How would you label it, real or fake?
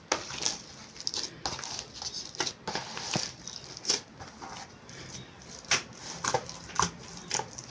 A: real